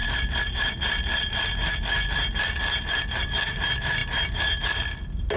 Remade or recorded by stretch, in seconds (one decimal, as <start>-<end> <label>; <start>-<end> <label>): 0.0-5.4 recorded